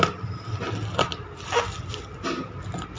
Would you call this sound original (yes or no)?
yes